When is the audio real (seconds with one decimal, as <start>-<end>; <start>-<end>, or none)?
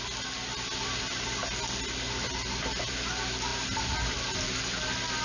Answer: 0.0-5.2